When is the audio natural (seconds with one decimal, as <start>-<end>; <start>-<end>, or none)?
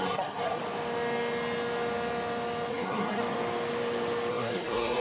0.6-2.7; 3.2-4.3